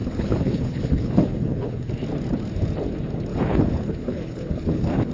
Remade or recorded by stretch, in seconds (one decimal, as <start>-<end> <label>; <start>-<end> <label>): 0.0-1.9 remade; 1.9-3.3 recorded; 3.3-5.1 remade